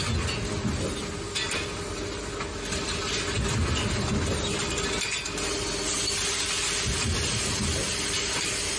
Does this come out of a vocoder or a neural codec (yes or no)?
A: no